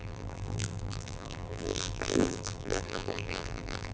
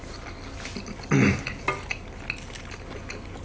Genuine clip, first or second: second